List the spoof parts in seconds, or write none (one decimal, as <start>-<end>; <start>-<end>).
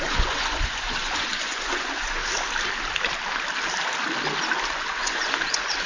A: 0.0-2.2; 4.7-5.9